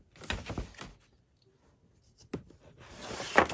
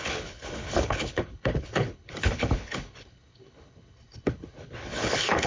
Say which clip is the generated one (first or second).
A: second